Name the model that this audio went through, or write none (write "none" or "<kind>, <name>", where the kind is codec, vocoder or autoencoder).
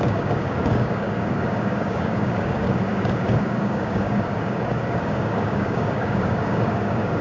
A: codec, DAC